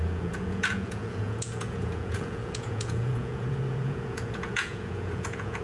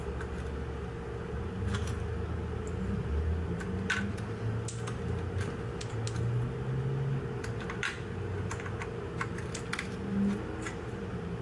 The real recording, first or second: second